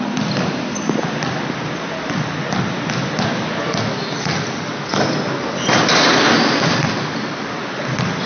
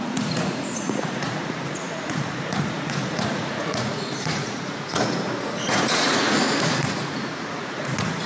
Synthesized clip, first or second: second